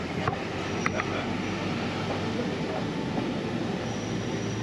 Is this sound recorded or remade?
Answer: recorded